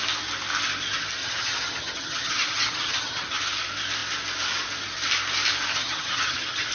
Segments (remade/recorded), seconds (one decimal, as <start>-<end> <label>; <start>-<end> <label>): 0.0-1.2 recorded; 1.2-3.4 remade; 3.4-5.7 recorded; 5.7-6.7 remade